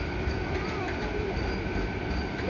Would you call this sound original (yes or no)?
yes